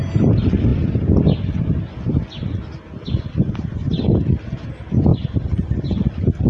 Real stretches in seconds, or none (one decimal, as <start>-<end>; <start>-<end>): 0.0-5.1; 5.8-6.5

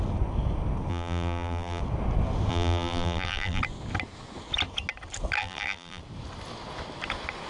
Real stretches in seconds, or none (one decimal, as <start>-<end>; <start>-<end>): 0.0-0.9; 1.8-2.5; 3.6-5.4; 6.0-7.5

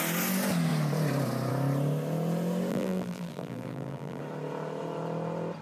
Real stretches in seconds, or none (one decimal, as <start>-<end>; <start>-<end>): 0.0-2.7; 4.2-5.6

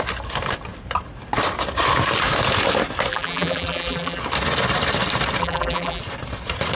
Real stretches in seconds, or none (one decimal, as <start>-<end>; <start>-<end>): 0.0-3.1; 4.2-5.4; 6.0-6.7

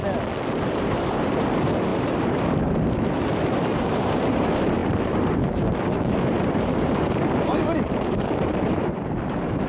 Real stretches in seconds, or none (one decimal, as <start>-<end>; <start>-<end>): 0.0-0.8